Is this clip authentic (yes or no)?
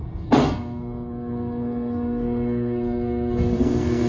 no